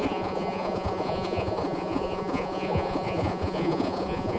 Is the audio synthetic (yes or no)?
yes